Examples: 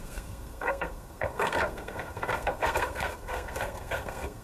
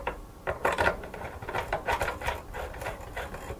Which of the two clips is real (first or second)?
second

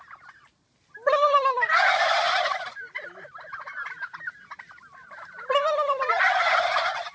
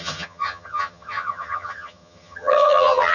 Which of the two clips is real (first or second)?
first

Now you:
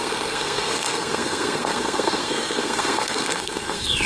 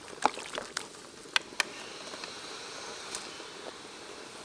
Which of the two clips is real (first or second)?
second